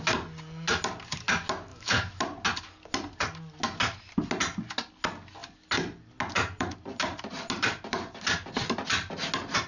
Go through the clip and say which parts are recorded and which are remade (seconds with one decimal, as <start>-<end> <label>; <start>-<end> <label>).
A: 0.0-1.7 recorded; 1.7-2.2 remade; 2.2-9.7 recorded